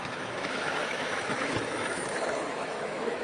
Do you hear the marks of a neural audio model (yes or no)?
yes